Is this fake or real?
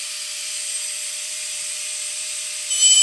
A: fake